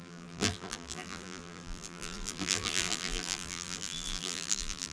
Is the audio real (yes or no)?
no